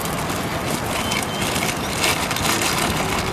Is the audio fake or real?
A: real